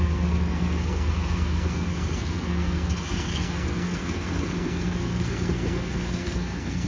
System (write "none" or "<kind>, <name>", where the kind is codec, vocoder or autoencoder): codec, SNAC